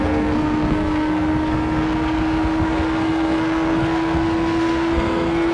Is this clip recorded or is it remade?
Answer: remade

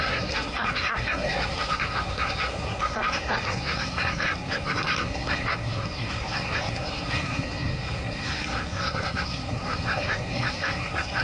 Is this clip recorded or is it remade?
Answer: remade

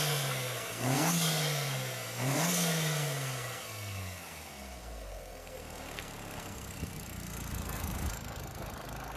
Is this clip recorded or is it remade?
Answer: remade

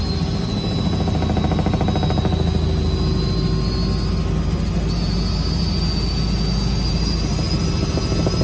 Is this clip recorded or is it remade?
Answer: recorded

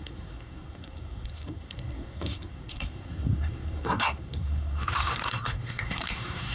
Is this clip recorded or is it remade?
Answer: remade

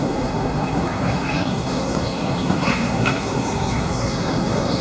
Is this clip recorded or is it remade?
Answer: remade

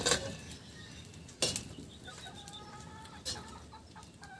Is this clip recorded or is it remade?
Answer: recorded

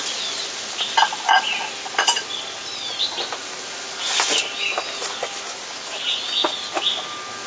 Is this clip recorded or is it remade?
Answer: recorded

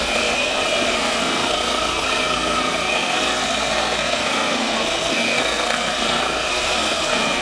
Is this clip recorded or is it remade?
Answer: remade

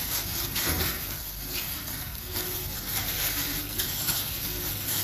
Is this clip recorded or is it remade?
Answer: remade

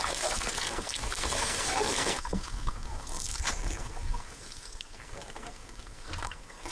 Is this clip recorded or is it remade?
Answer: remade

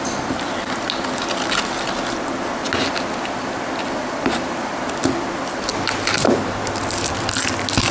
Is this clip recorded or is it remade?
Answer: recorded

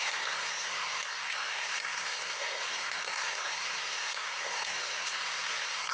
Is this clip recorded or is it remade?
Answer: remade